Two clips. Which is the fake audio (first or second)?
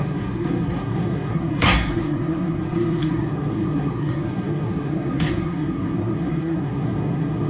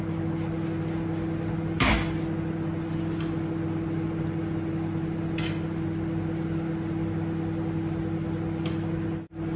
first